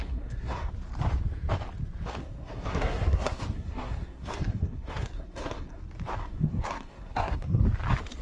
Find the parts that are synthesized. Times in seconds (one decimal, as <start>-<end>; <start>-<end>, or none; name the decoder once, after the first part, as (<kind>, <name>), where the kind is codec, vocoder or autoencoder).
0.0-0.7 (codec, SNAC); 2.2-5.8; 6.2-7.6